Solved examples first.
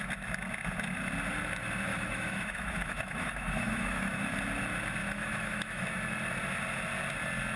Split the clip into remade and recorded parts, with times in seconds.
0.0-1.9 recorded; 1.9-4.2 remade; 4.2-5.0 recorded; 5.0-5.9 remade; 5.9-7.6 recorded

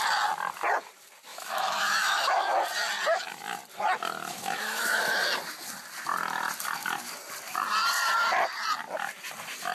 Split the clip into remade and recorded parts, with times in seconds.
0.0-1.3 recorded; 1.3-2.6 remade; 2.6-4.3 recorded; 4.3-5.0 remade; 5.0-9.7 recorded

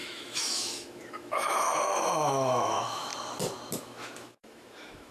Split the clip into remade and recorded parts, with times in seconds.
0.0-3.1 remade; 3.1-3.8 recorded; 3.8-5.1 remade

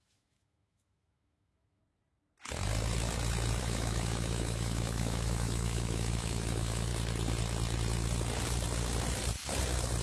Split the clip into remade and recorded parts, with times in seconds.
0.0-1.8 remade; 1.8-3.6 recorded; 3.6-6.9 remade; 6.9-10.0 recorded